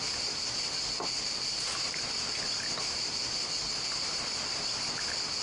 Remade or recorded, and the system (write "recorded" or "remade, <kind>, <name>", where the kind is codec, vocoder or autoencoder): recorded